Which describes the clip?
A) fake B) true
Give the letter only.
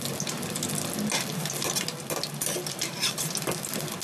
B